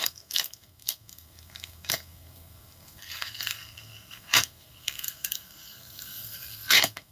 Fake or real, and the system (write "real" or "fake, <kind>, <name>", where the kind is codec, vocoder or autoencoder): fake, codec, SNAC